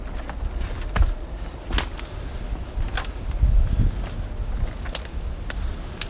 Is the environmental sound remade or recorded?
recorded